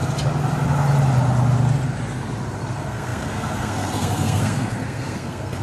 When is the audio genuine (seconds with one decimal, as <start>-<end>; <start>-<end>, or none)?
0.0-2.7